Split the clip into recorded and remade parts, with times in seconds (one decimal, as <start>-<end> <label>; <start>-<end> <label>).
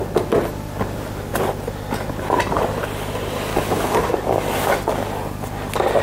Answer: 0.0-3.5 recorded; 3.5-4.5 remade; 4.5-6.0 recorded